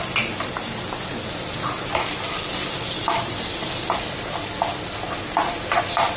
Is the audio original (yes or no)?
yes